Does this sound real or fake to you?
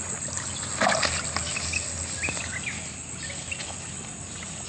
real